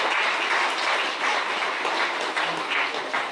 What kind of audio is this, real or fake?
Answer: real